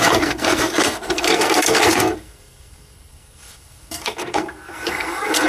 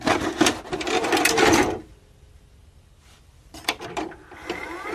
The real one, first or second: second